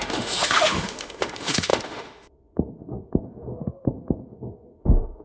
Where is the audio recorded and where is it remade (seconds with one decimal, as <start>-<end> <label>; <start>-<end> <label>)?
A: 0.0-5.2 remade